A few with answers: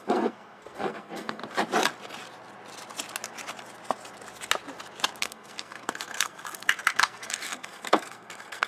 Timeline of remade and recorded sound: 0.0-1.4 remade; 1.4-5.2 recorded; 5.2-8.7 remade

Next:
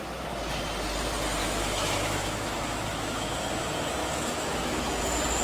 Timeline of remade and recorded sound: 0.0-1.4 recorded; 1.4-3.5 remade; 3.5-4.0 recorded; 4.0-5.0 remade; 5.0-5.4 recorded

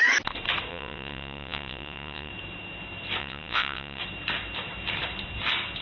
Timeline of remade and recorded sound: 0.0-0.7 recorded; 0.7-2.3 remade; 2.3-3.2 recorded; 3.2-4.0 remade; 4.0-5.8 recorded

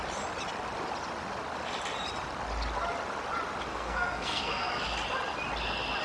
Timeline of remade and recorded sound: 0.0-3.7 recorded; 3.7-4.7 remade; 4.7-6.0 recorded

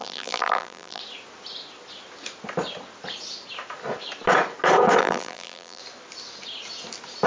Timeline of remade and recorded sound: 0.0-1.0 remade; 1.0-5.0 recorded; 5.0-5.8 remade; 5.8-7.3 recorded